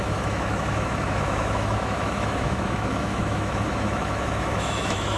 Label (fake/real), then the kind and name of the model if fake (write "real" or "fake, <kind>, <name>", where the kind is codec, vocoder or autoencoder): fake, autoencoder, DAC-VAE